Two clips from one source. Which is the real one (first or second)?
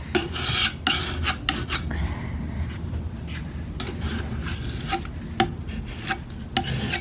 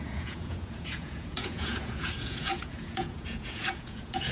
first